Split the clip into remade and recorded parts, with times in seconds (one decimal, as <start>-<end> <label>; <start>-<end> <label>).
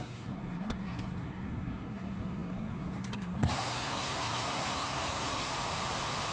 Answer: 0.0-5.5 remade; 5.5-6.3 recorded